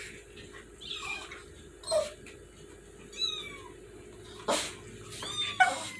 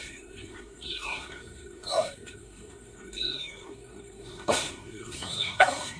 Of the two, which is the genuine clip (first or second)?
first